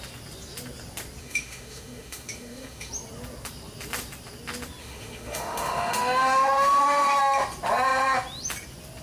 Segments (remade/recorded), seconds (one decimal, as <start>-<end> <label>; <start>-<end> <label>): 0.0-1.2 recorded; 1.2-2.9 remade; 2.9-4.8 recorded; 4.8-7.2 remade; 7.2-9.0 recorded